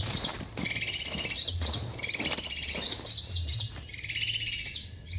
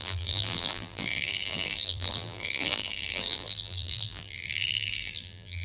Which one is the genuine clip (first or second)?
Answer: first